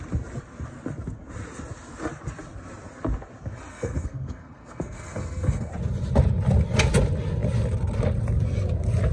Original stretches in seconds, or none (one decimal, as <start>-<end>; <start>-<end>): 0.0-3.7; 5.7-9.1